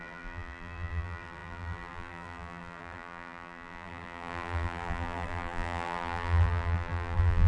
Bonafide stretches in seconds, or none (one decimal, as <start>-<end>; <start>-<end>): none